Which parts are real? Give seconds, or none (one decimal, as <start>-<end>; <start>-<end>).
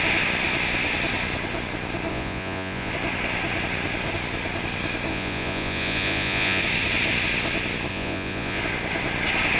0.0-2.1; 2.9-5.1; 6.6-7.9; 8.6-9.6